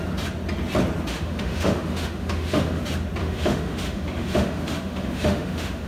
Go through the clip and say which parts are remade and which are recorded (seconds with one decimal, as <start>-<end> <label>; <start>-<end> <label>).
0.0-1.1 recorded; 1.1-2.8 remade; 2.8-3.2 recorded; 3.2-5.9 remade